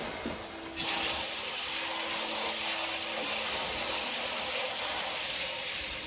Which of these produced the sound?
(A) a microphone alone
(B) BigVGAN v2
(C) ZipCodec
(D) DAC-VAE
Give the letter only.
A